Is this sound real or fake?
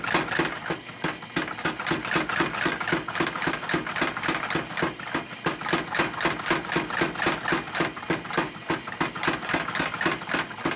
real